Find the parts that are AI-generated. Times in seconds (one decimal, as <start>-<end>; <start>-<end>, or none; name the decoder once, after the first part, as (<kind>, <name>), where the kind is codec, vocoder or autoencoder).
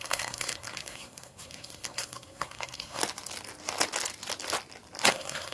0.0-3.0 (codec, SNAC); 5.1-5.5